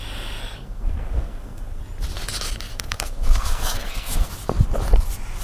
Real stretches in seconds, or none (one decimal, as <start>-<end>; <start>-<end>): 0.0-0.4; 1.8-2.7; 4.3-5.4